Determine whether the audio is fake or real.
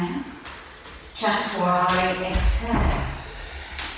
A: real